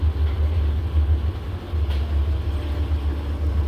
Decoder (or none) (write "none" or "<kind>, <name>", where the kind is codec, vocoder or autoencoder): none